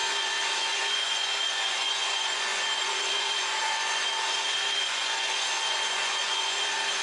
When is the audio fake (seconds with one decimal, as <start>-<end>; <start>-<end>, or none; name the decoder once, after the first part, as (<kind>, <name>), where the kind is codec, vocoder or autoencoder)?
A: 0.0-7.0 (vocoder, Vocos)